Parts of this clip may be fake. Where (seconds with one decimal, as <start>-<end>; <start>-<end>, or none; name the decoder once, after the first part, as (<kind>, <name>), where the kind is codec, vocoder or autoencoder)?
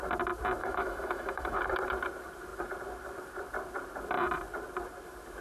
0.6-1.6 (autoencoder, DAC-VAE)